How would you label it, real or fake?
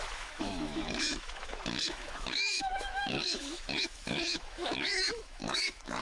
fake